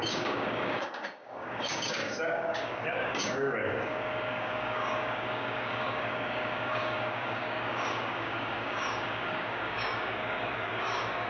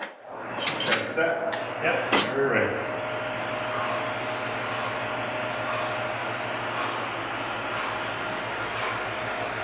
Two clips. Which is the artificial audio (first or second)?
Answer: first